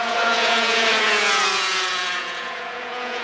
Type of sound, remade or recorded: remade